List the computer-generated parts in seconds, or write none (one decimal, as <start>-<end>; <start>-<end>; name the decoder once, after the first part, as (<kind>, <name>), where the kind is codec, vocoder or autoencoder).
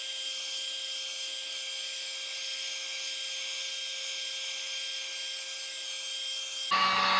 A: none